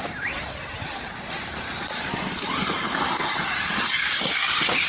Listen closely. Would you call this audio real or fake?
real